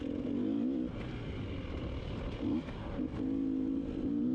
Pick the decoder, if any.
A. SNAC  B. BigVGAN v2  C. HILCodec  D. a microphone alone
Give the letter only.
D